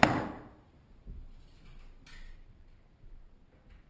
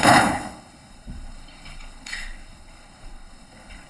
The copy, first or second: second